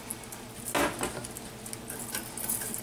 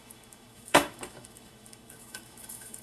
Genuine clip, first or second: first